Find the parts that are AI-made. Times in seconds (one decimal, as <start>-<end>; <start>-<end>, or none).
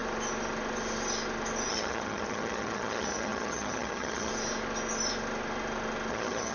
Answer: 1.7-4.3; 6.1-6.5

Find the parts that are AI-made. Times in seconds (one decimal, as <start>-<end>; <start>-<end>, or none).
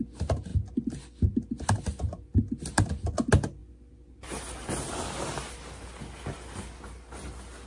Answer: none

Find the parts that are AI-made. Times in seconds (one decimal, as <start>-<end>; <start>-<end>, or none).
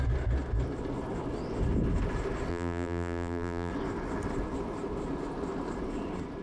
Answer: 2.5-3.7